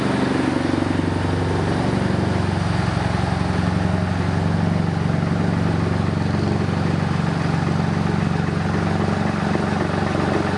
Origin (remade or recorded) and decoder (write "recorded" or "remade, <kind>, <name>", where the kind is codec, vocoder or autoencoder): recorded